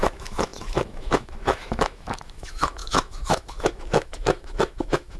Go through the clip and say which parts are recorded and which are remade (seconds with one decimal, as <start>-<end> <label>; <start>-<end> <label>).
0.0-5.2 remade